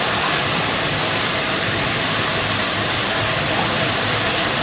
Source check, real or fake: fake